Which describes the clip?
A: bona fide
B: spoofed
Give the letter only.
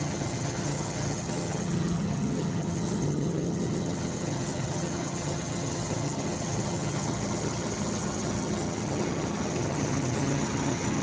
B